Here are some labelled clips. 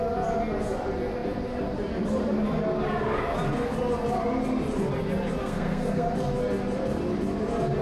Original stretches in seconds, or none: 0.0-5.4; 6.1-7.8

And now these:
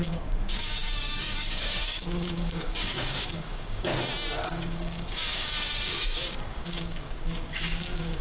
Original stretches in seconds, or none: 3.9-4.5